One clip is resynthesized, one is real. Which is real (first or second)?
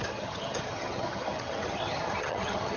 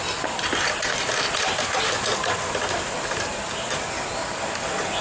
second